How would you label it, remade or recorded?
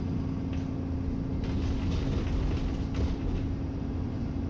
recorded